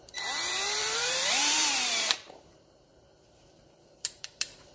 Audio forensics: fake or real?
fake